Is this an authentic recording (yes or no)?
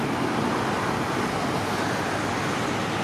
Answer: yes